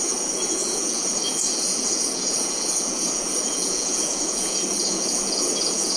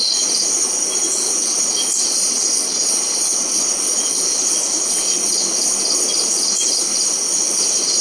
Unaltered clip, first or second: second